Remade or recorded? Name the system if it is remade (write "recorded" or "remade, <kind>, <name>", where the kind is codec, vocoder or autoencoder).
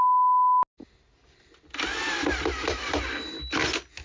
recorded